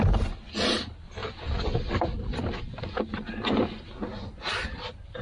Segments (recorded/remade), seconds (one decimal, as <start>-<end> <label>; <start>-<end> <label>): 0.0-5.2 recorded